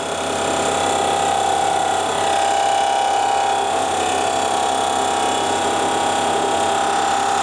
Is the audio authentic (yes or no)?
yes